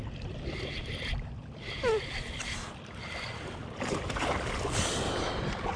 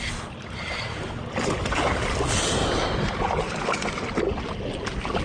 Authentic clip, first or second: second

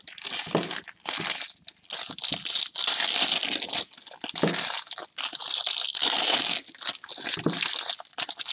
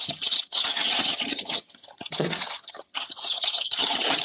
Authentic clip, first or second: first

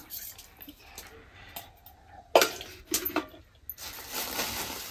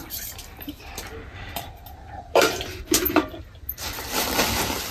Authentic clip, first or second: first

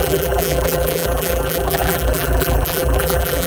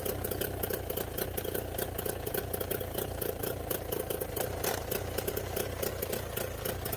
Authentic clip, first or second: second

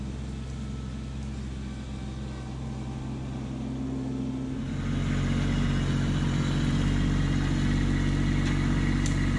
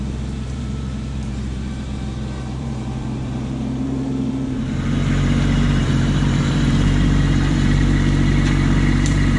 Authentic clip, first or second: first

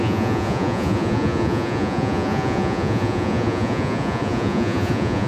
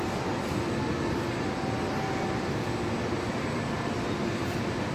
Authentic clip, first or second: second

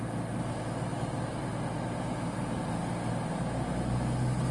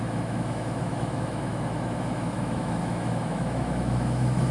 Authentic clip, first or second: first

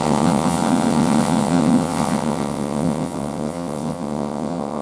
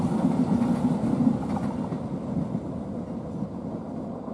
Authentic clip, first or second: second